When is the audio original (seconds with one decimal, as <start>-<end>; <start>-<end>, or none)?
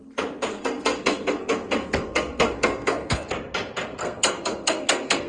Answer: 0.0-0.5; 3.3-4.0